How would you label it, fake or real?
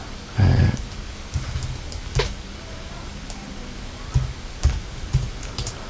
fake